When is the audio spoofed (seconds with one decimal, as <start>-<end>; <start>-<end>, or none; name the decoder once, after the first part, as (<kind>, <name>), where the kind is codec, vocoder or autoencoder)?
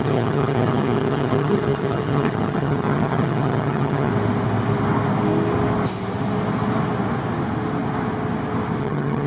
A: 0.0-4.1 (vocoder, HiFi-GAN); 8.8-9.3